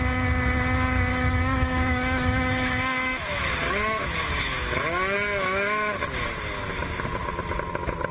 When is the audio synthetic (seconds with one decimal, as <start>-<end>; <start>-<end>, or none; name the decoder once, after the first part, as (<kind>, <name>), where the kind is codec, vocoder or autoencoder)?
1.1-6.0 (autoencoder, DAC-VAE)